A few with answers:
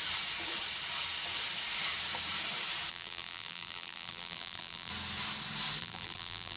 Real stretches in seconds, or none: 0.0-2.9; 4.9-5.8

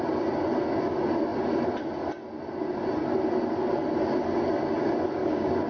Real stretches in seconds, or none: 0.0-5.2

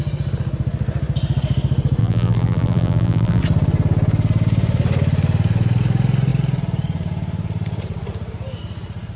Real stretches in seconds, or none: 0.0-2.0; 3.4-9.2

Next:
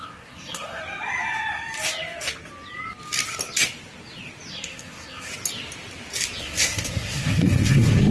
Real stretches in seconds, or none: 0.8-4.5; 5.3-6.4